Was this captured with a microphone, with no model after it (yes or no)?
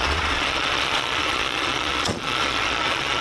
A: no